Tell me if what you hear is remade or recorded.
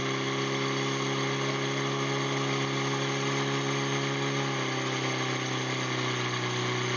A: recorded